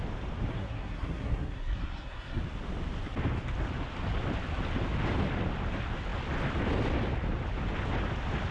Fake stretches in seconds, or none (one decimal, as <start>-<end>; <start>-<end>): 0.5-2.4